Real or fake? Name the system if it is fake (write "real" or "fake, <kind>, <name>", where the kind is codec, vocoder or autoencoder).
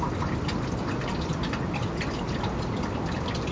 real